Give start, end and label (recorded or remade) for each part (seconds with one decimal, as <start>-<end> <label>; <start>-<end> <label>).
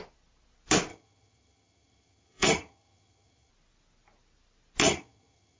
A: 0.0-0.9 recorded; 0.9-3.5 remade; 3.5-4.8 recorded; 4.8-5.6 remade